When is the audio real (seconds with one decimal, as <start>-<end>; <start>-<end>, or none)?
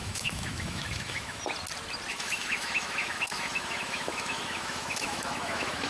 1.4-2.1